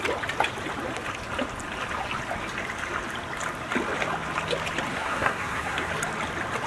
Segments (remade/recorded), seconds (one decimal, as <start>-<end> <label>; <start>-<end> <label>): 0.0-4.9 recorded; 4.9-5.9 remade; 5.9-6.7 recorded